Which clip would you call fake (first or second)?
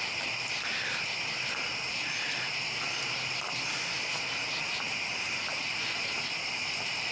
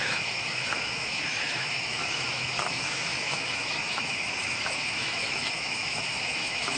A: second